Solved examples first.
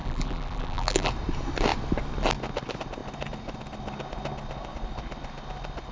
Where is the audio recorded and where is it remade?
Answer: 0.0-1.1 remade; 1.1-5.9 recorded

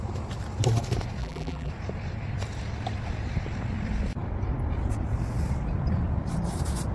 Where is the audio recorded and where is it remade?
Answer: 0.0-1.2 recorded; 1.2-1.7 remade; 1.7-6.9 recorded